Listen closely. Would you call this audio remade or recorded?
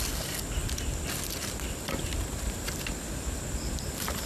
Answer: recorded